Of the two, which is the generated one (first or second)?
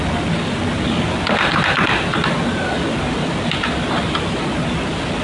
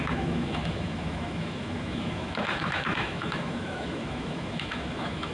second